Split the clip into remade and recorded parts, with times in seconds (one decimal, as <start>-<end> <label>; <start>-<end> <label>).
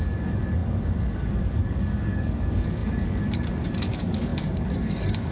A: 0.0-5.3 remade